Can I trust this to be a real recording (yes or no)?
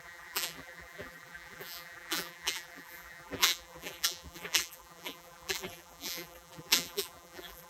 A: no